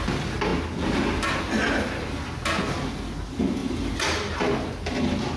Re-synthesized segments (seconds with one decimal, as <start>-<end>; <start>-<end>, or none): none